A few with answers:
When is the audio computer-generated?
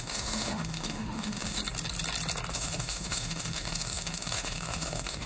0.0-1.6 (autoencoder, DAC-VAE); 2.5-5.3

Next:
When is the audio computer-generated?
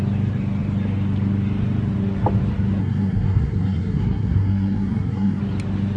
2.8-5.4 (codec, SNAC)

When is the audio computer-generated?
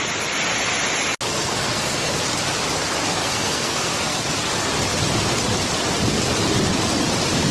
1.3-2.2 (codec, SNAC); 3.2-4.2